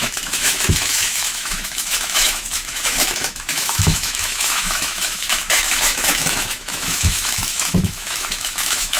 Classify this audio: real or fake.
fake